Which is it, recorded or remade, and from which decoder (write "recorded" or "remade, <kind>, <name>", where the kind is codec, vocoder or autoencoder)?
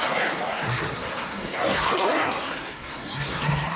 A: remade, codec, SNAC